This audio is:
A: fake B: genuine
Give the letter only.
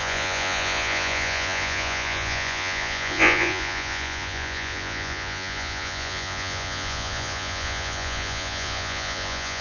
A